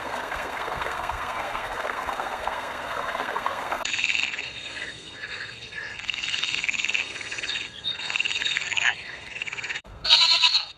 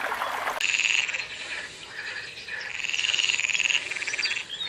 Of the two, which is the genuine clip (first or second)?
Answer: second